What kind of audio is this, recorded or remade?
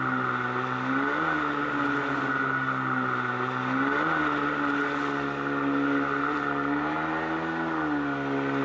recorded